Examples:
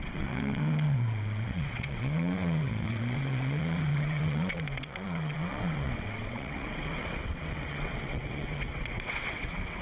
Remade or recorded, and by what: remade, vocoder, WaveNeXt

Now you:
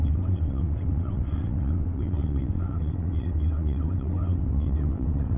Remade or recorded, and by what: remade, vocoder, WaveNeXt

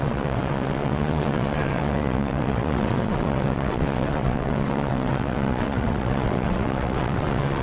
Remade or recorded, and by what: remade, vocoder, WaveNeXt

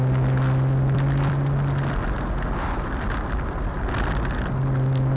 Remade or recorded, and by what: recorded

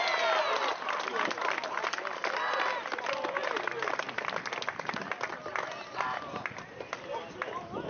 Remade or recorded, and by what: recorded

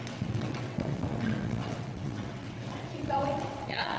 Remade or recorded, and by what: remade, vocoder, WaveNeXt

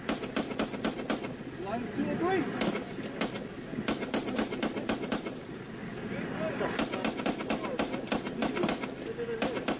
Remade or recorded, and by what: recorded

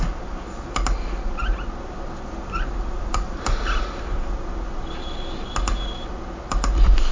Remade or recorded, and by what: recorded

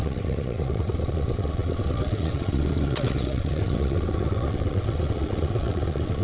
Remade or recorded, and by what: remade, vocoder, WaveNeXt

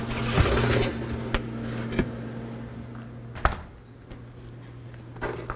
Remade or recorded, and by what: recorded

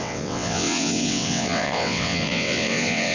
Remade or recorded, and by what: remade, vocoder, WaveNeXt